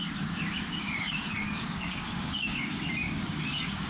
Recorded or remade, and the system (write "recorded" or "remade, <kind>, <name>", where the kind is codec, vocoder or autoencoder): remade, codec, DAC